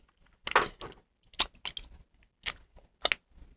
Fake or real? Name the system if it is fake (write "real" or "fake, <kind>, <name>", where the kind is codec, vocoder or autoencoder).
real